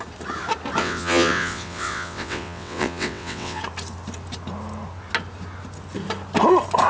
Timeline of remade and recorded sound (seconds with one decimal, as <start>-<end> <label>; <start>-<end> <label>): 0.0-0.8 recorded; 0.8-3.6 remade; 3.6-6.9 recorded